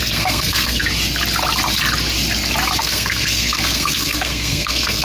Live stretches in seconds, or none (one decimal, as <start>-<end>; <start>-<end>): 0.8-2.8